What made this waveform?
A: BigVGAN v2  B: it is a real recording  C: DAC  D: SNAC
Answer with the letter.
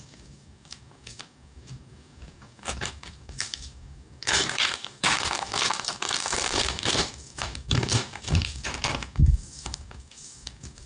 C